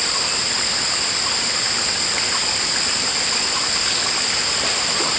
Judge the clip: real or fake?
real